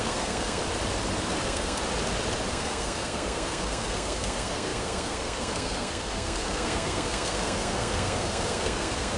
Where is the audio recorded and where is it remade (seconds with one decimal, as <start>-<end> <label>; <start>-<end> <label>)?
0.0-0.6 remade; 0.6-1.4 recorded; 1.4-1.8 remade; 1.8-2.5 recorded; 2.5-9.2 remade